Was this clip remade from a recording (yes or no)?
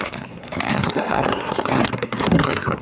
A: yes